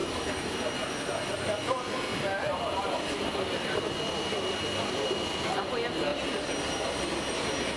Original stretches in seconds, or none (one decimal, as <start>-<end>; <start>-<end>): 0.0-2.1; 3.8-6.1; 7.3-7.8